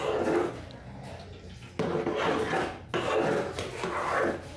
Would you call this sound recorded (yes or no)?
yes